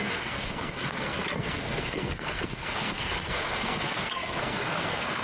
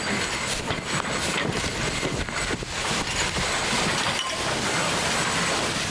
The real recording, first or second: second